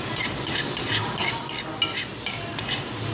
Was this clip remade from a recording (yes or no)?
no